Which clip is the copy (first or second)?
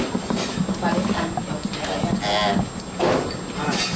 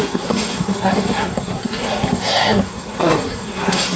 second